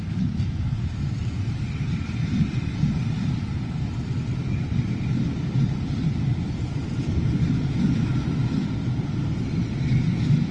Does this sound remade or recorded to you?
remade